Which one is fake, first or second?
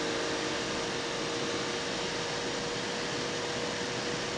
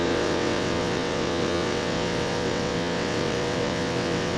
second